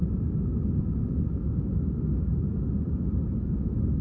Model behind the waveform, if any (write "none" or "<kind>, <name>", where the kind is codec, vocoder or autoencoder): none